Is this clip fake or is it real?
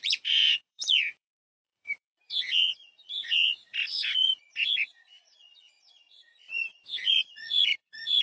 fake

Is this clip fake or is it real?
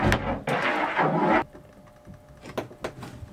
real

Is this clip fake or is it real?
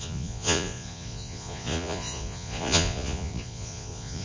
fake